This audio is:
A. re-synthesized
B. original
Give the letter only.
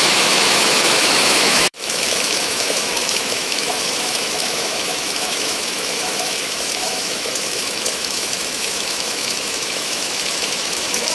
A